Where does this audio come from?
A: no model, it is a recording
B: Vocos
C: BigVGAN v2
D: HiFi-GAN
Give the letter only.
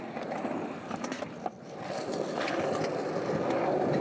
C